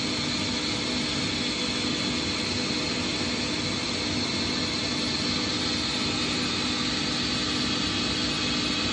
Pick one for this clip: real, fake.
real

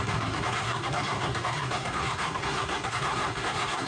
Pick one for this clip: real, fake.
fake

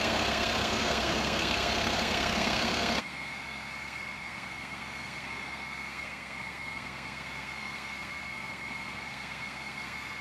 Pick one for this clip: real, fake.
fake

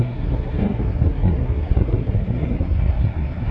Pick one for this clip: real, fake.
fake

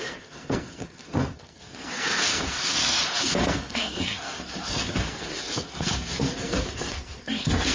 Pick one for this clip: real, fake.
fake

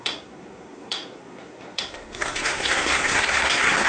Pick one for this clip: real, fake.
fake